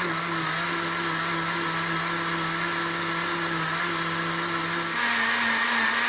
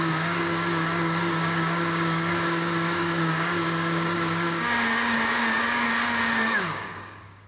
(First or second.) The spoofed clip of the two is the second